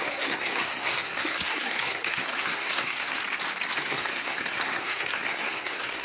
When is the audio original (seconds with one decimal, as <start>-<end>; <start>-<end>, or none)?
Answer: 3.2-3.8